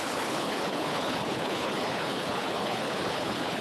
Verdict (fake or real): fake